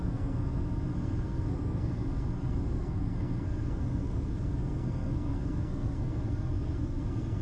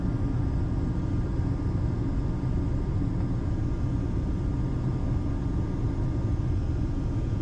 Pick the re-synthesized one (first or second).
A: first